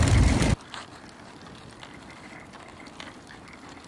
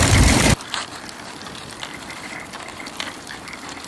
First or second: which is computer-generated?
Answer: second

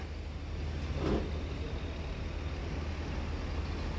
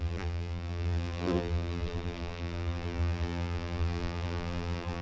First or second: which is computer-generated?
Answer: second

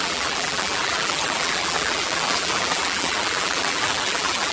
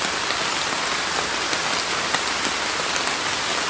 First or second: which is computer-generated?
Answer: first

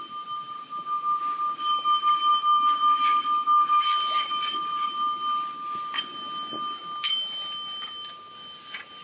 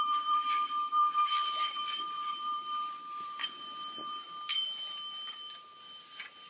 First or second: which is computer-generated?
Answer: second